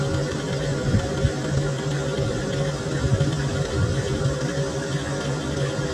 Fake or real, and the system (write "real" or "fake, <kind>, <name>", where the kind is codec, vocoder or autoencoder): real